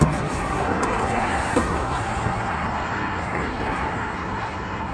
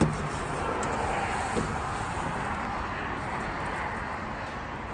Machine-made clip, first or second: first